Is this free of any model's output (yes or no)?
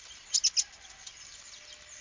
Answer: yes